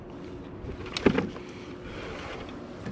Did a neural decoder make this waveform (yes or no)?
no